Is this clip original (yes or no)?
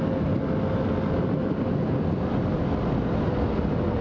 yes